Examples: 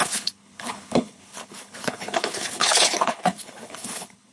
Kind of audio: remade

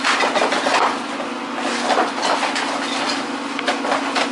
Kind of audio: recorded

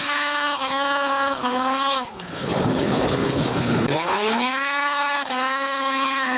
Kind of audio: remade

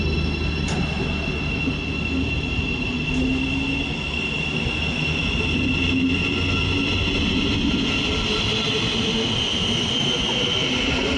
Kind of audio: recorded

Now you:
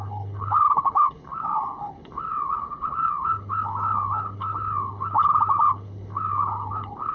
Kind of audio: remade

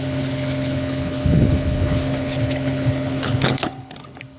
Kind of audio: remade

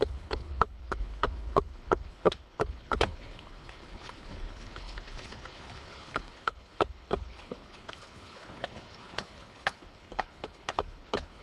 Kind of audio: remade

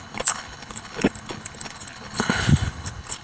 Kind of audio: remade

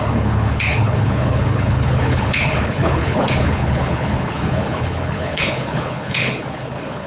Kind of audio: remade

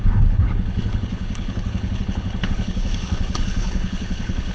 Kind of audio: remade